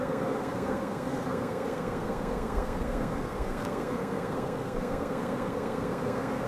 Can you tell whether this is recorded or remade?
remade